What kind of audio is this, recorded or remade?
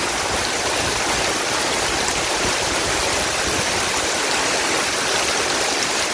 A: recorded